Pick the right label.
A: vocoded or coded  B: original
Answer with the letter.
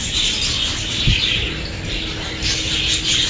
B